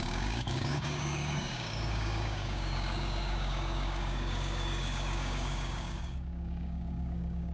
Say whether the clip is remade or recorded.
remade